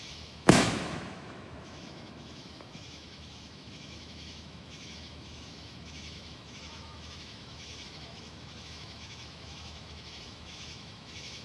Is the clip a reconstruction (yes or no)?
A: yes